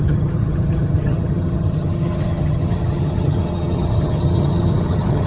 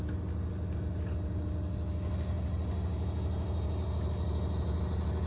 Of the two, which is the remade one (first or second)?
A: first